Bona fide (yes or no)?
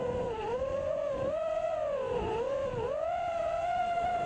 no